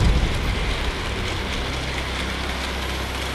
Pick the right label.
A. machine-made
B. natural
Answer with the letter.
B